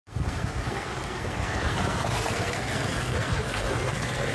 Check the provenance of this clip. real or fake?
fake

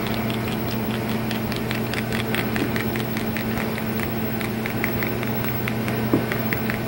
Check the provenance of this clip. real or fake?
real